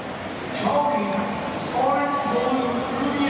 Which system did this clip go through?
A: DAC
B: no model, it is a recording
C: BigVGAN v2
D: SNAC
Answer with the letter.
B